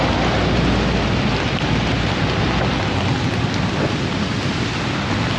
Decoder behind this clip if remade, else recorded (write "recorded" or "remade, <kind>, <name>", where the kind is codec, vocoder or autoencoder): recorded